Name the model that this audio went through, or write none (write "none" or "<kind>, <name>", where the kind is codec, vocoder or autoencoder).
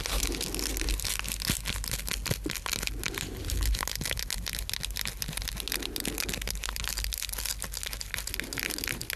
none